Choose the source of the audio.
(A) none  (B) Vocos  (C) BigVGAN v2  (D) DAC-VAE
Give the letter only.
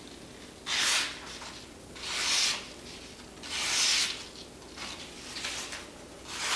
A